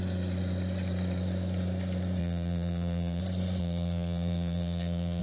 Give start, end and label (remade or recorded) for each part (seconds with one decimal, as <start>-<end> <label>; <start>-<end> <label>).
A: 0.0-2.2 recorded; 2.2-3.2 remade; 3.2-3.6 recorded; 3.6-5.2 remade

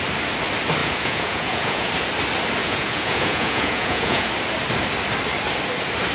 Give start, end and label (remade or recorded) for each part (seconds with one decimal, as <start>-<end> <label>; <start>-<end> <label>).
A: 0.0-0.8 recorded; 0.8-1.9 remade; 1.9-2.6 recorded; 2.6-4.3 remade; 4.3-6.1 recorded

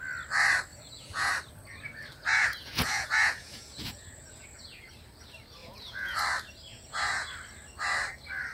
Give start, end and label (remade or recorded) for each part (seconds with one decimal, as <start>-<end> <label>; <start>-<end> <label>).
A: 0.0-0.7 recorded; 0.7-1.3 remade; 1.3-2.3 recorded; 2.3-4.9 remade; 4.9-5.6 recorded; 5.6-6.2 remade; 6.2-6.7 recorded; 6.7-7.3 remade; 7.3-8.5 recorded

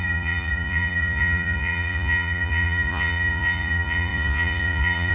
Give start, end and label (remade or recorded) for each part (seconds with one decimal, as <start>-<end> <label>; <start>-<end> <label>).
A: 0.0-5.1 remade

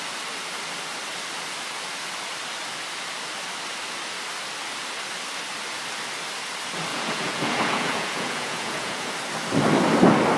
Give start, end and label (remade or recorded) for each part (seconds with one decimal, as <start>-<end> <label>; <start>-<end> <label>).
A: 0.0-6.9 recorded; 6.9-9.1 remade; 9.1-10.4 recorded

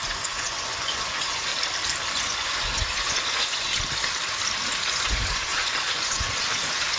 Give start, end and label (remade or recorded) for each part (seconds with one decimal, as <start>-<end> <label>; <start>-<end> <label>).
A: 0.0-1.5 remade; 1.5-2.1 recorded; 2.1-3.7 remade; 3.7-4.9 recorded; 4.9-7.0 remade

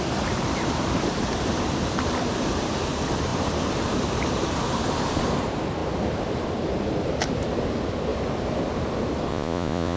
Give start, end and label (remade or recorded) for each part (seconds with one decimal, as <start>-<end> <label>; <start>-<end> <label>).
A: 0.0-9.3 recorded; 9.3-10.0 remade

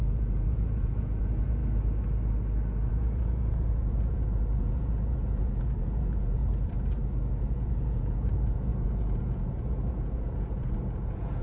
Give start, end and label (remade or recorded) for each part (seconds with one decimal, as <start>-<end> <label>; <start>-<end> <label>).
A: 0.0-1.6 remade; 1.6-2.9 recorded; 2.9-6.4 remade; 6.4-7.4 recorded; 7.4-11.4 remade